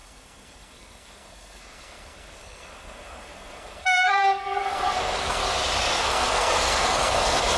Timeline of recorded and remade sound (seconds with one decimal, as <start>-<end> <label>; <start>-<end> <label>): 0.0-5.4 remade; 5.4-6.0 recorded; 6.0-7.6 remade